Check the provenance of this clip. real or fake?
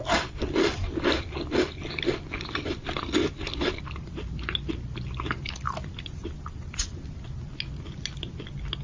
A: real